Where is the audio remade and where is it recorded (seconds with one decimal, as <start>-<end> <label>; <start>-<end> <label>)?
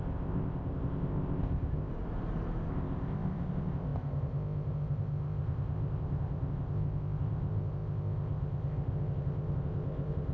0.0-1.9 remade; 1.9-2.7 recorded; 2.7-10.3 remade